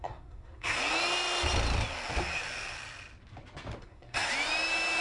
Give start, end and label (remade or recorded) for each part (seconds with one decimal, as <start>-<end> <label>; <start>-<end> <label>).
0.0-0.8 remade; 0.8-3.8 recorded; 3.8-4.3 remade; 4.3-5.0 recorded